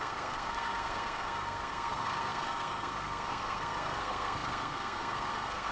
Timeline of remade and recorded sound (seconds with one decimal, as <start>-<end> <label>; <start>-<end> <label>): 0.0-5.7 remade